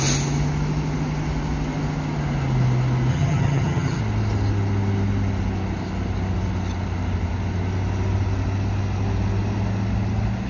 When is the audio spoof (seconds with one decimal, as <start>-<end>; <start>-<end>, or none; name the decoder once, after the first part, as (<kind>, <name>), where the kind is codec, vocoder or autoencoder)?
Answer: 3.1-4.0 (vocoder, HiFi-GAN)

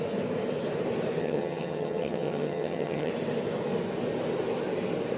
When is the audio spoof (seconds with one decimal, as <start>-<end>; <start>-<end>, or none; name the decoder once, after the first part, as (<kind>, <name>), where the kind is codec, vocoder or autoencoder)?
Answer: 1.2-3.1 (vocoder, HiFi-GAN)

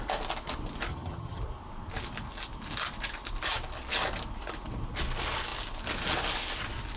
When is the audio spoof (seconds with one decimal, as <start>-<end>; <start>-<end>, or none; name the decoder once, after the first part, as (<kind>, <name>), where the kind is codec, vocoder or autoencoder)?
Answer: 0.9-1.4 (vocoder, HiFi-GAN)

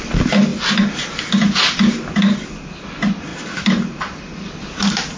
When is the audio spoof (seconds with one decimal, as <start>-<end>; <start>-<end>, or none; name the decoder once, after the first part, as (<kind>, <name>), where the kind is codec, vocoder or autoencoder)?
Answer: none

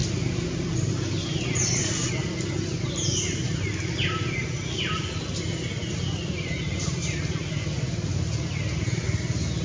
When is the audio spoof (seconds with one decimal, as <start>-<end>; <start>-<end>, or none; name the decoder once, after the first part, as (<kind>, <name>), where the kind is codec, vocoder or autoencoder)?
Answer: none

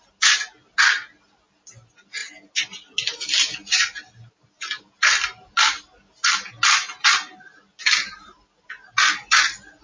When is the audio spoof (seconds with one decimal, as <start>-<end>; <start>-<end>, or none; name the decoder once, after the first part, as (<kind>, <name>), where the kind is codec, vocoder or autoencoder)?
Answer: none

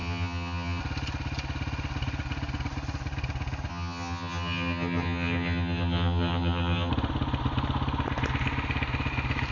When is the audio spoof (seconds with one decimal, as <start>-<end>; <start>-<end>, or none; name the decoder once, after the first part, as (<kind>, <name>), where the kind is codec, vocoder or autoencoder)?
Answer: 0.0-0.8 (vocoder, HiFi-GAN); 3.7-6.9